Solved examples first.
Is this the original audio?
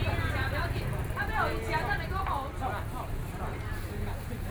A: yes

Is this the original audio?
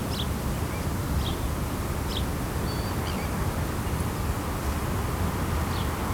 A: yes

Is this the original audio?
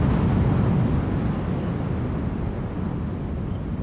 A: yes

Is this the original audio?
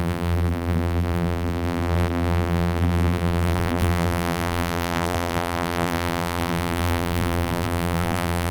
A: no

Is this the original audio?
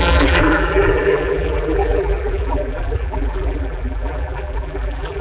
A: no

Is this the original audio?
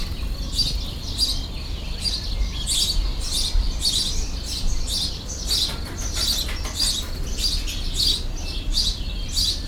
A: yes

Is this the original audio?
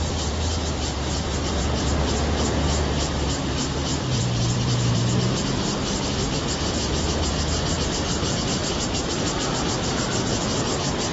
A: no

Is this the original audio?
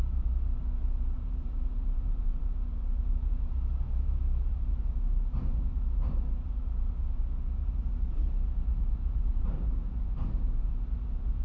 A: no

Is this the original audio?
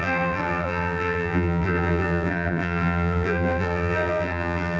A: no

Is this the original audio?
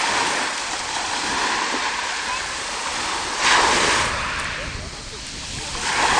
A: yes